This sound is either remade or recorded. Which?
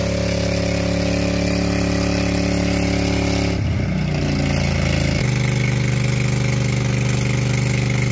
recorded